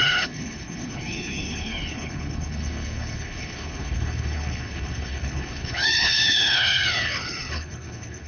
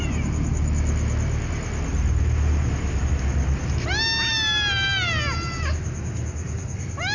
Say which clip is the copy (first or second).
first